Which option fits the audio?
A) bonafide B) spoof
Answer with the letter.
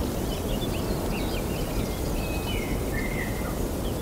A